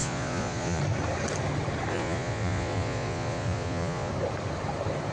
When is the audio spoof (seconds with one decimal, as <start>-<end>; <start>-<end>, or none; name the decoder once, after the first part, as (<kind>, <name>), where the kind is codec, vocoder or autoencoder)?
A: 0.0-0.8 (vocoder, Vocos); 1.9-4.1